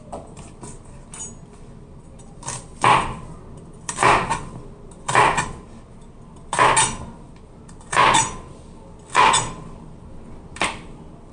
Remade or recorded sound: recorded